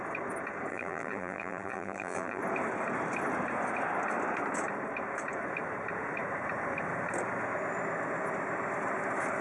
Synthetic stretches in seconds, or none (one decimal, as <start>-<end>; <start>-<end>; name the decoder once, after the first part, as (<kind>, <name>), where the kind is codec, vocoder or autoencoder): 0.7-2.4 (vocoder, BigVGAN v2)